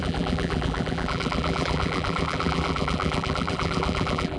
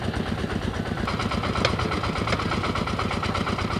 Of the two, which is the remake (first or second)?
first